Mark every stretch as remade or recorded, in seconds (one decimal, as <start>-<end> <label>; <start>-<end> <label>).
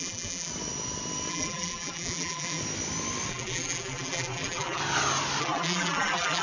0.0-0.5 remade; 0.5-1.3 recorded; 1.3-2.6 remade; 2.6-3.3 recorded; 3.3-4.8 remade; 4.8-5.4 recorded; 5.4-6.4 remade